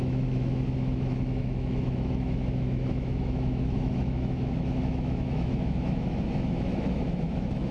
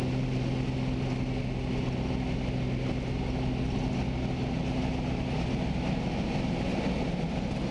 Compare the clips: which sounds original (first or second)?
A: second